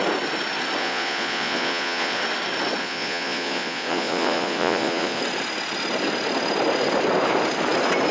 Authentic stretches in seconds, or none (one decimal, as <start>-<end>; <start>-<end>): 0.0-0.8; 2.2-2.8; 5.2-8.1